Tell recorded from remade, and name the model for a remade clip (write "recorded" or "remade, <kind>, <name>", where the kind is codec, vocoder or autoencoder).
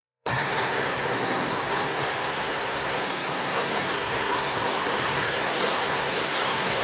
remade, codec, SNAC